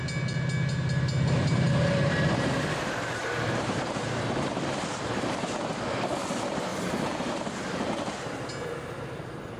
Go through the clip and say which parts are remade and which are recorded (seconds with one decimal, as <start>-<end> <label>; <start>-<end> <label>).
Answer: 0.0-1.4 recorded; 1.4-4.8 remade; 4.8-9.6 recorded